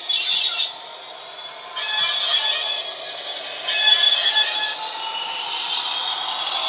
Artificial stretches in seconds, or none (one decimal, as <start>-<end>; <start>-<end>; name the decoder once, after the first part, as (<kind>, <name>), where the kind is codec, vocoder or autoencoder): none